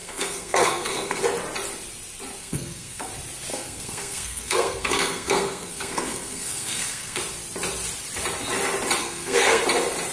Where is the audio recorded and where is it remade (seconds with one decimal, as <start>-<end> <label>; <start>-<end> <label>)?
0.0-1.2 remade; 1.2-2.4 recorded; 2.4-3.1 remade; 3.1-3.5 recorded; 3.5-7.2 remade; 7.2-9.0 recorded; 9.0-9.6 remade; 9.6-10.1 recorded